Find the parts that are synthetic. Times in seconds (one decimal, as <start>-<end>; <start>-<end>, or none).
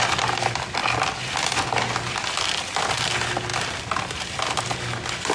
none